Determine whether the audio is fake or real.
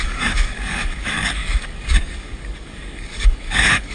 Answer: fake